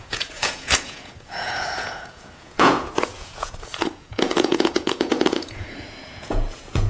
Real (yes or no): no